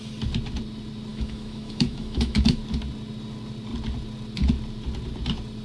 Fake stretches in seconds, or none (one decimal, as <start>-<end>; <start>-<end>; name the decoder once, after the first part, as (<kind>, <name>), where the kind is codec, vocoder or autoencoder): 1.1-2.6 (autoencoder, DAC-VAE)